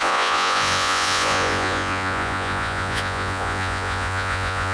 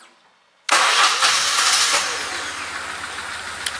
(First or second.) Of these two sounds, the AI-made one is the first